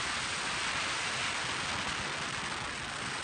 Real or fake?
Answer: real